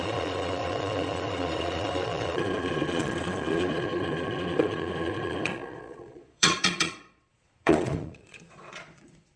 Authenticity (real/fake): fake